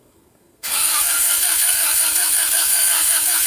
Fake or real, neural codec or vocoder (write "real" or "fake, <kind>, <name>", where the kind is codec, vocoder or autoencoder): fake, codec, SNAC